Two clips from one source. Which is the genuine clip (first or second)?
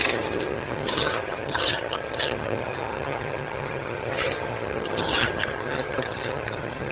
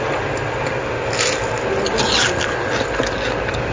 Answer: second